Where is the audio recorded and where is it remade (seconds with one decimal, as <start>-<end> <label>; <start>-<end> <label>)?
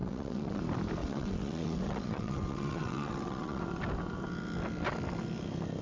0.0-0.6 remade; 0.6-1.0 recorded; 1.0-3.6 remade; 3.6-5.8 recorded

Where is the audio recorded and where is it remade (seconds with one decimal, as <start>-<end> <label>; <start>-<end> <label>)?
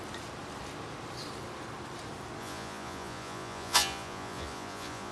0.0-2.4 recorded; 2.4-5.1 remade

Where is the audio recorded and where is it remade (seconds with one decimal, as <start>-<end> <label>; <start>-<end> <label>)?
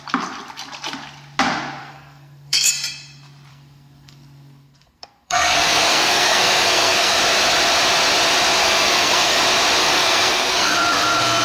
0.0-1.8 recorded; 1.8-2.7 remade; 2.7-3.5 recorded; 3.5-7.2 remade; 7.2-8.6 recorded; 8.6-9.4 remade; 9.4-9.8 recorded; 9.8-10.7 remade; 10.7-11.4 recorded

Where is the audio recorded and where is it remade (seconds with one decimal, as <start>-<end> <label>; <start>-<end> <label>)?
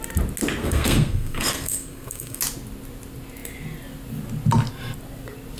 0.0-0.6 recorded; 0.6-2.4 remade; 2.4-5.6 recorded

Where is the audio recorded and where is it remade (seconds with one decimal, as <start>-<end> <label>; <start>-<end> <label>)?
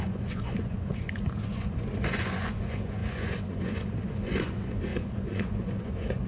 0.0-6.3 remade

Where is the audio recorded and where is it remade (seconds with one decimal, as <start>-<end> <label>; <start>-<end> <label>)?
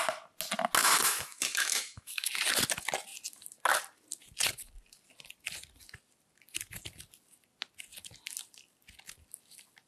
0.0-0.8 recorded; 0.8-2.3 remade; 2.3-9.9 recorded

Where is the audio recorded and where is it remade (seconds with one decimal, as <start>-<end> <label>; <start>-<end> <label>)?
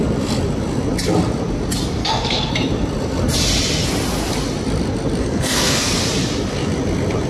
0.0-2.0 recorded; 2.0-2.5 remade; 2.5-5.2 recorded; 5.2-6.0 remade; 6.0-7.3 recorded